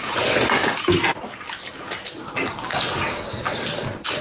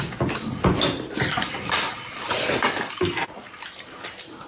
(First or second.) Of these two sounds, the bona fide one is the first